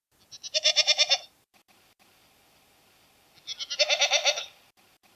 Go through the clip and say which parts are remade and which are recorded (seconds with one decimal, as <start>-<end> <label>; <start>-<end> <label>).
0.0-5.2 recorded